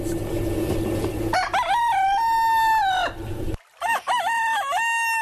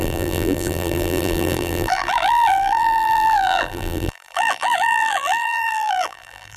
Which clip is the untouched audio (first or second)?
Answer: first